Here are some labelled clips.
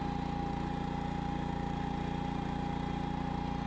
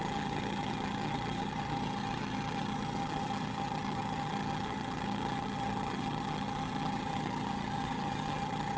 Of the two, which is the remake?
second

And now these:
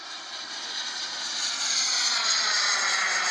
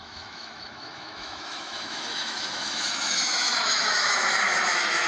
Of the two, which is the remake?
second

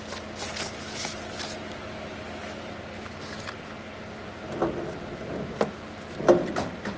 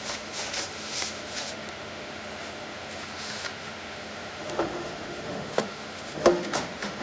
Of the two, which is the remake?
second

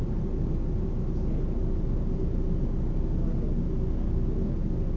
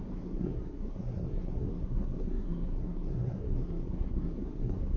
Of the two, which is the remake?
second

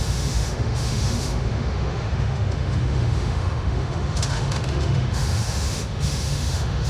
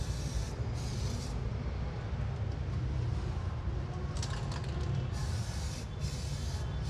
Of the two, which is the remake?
first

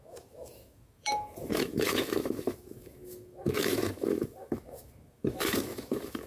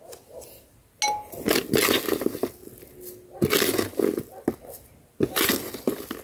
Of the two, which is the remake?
first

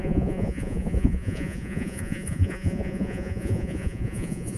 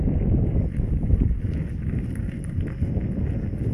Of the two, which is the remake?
first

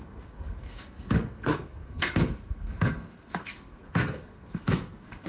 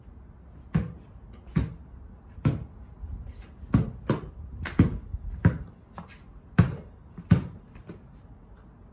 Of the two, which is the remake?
first